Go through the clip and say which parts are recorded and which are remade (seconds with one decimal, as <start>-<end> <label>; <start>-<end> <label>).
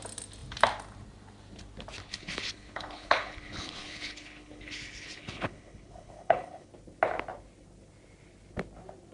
0.0-2.0 recorded; 2.0-6.7 remade; 6.7-9.1 recorded